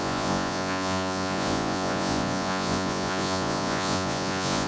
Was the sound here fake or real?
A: fake